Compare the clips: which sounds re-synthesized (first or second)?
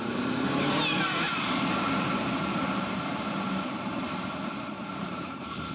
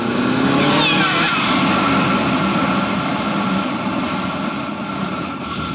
first